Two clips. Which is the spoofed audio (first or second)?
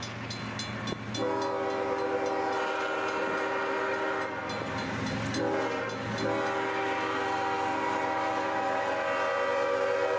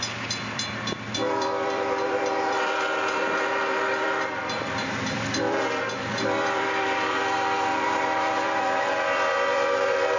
second